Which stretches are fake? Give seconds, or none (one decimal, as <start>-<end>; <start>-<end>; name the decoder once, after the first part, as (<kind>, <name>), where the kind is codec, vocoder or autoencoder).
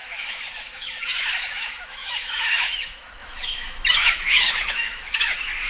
0.0-5.7 (autoencoder, DAC-VAE)